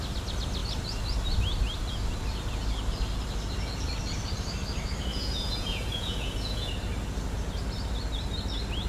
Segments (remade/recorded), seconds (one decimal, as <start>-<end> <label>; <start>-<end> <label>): 0.0-5.1 recorded; 5.1-6.7 remade; 6.7-8.9 recorded